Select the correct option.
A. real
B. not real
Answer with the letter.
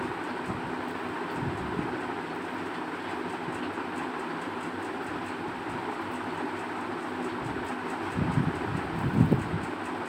A